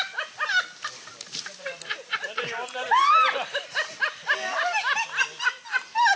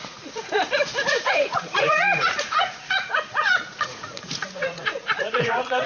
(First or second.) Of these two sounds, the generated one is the second